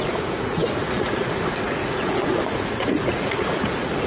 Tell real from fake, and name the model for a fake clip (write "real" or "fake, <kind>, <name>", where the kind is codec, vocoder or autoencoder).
fake, vocoder, Vocos